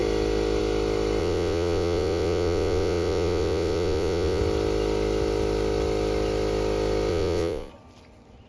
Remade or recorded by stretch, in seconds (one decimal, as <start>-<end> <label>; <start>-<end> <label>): 0.0-1.2 recorded; 1.2-4.4 remade; 4.4-7.1 recorded; 7.1-7.7 remade; 7.7-8.5 recorded